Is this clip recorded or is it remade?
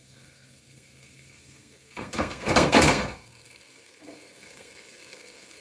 remade